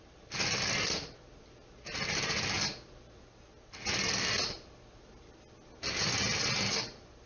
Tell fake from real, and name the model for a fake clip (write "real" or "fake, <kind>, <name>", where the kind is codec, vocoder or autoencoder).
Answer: real